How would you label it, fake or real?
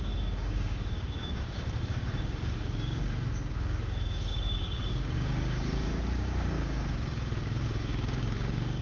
fake